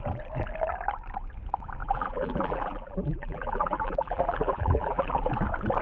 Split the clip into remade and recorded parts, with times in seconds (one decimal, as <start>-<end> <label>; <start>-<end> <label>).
0.0-1.8 recorded; 1.8-5.3 remade; 5.3-5.8 recorded